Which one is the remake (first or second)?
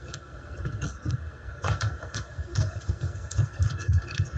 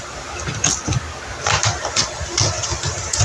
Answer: first